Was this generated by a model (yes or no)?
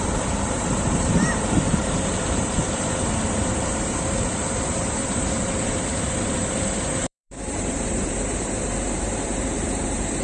yes